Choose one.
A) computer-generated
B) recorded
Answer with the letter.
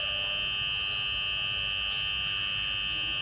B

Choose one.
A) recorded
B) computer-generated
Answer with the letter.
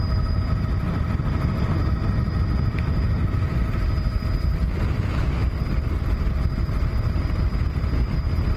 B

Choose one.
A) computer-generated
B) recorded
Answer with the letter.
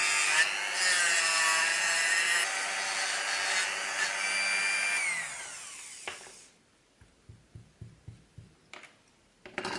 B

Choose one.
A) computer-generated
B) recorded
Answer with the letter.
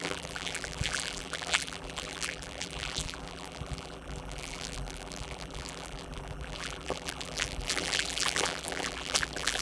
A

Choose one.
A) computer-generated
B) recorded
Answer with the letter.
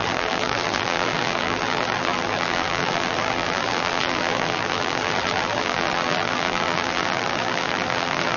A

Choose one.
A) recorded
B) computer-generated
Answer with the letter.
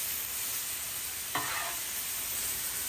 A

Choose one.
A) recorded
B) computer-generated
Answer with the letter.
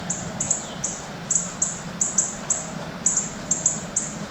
A